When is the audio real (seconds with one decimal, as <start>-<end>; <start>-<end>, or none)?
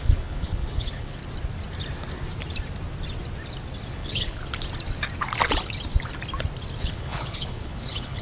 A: 1.2-3.9; 4.4-6.8